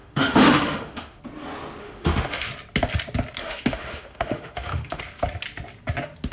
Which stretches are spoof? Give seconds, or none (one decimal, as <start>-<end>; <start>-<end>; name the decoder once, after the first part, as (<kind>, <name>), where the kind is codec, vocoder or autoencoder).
0.0-1.2 (autoencoder, DAC-VAE); 1.8-2.5; 3.4-5.0